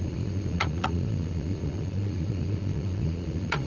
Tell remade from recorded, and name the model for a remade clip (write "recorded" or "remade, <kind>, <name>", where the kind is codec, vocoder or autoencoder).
remade, vocoder, Vocos